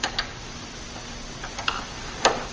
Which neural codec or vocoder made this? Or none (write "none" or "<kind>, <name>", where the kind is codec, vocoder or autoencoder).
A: vocoder, BigVGAN v2